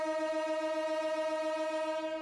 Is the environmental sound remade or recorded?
recorded